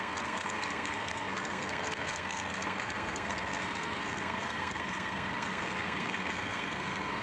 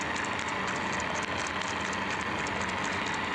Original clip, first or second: second